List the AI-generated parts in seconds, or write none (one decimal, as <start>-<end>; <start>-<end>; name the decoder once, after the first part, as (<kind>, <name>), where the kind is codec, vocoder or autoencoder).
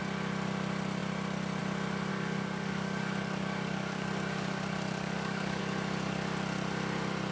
2.1-5.6 (codec, DAC)